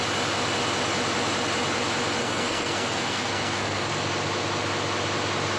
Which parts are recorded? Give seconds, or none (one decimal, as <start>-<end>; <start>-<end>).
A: 0.0-2.2; 3.9-5.6